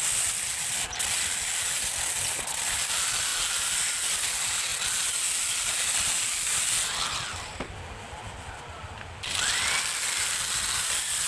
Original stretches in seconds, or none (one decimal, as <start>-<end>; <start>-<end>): 0.0-11.3